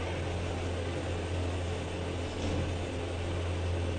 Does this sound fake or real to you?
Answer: real